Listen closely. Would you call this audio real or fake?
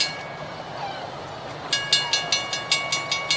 real